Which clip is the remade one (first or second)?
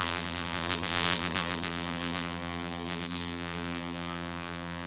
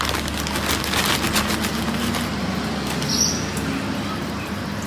first